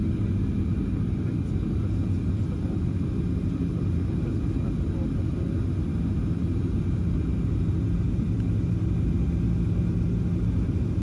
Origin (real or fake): real